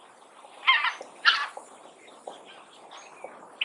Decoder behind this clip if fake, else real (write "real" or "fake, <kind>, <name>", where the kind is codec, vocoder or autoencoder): real